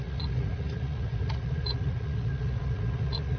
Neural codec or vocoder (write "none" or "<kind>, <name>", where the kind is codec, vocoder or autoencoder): vocoder, Vocos